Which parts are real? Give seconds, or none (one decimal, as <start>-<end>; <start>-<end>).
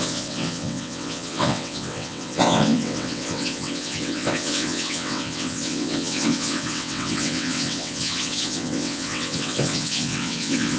none